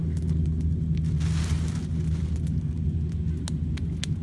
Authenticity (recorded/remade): recorded